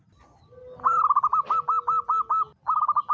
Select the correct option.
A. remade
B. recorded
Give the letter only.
B